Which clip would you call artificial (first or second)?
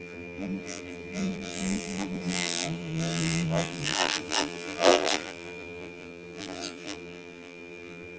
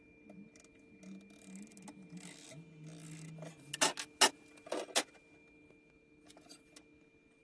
first